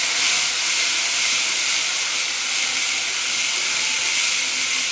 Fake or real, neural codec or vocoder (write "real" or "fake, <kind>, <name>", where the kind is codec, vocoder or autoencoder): real